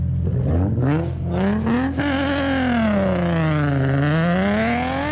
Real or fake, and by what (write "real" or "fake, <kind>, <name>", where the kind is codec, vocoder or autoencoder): real